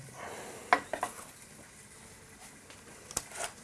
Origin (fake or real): real